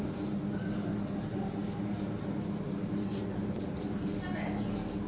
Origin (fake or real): real